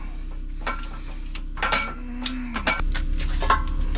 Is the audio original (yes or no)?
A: yes